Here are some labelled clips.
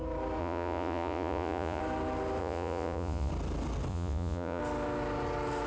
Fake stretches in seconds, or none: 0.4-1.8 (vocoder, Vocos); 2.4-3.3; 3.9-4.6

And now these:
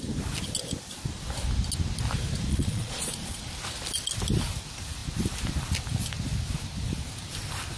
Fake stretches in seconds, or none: 2.5-3.4 (vocoder, Vocos)

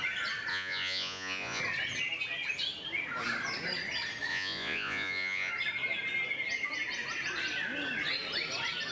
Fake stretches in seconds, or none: 0.5-1.6 (vocoder, Vocos); 4.3-5.5